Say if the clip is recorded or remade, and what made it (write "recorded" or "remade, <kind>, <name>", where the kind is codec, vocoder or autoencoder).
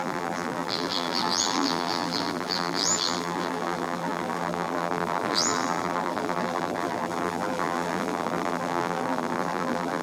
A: remade, vocoder, BigVGAN v2